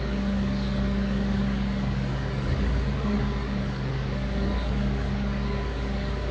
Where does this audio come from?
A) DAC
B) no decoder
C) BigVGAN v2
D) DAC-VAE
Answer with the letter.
A